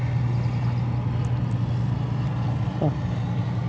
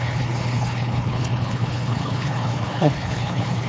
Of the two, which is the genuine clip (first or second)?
first